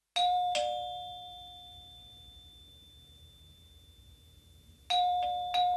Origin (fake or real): real